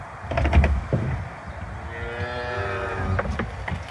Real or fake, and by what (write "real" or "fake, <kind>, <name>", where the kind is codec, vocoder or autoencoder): real